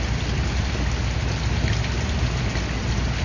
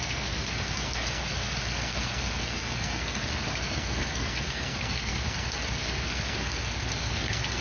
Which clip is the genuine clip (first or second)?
first